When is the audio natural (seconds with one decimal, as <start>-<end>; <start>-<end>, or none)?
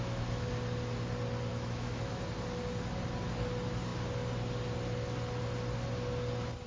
0.5-1.5; 2.2-6.7